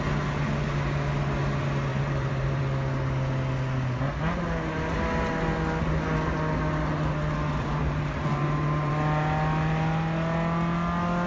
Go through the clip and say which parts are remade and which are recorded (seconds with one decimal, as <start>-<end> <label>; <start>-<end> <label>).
0.0-1.9 recorded; 1.9-2.6 remade; 2.6-7.8 recorded; 7.8-8.9 remade; 8.9-11.3 recorded